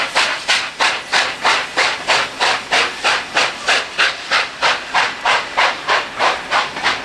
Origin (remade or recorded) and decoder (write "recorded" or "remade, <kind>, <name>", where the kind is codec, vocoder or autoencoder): recorded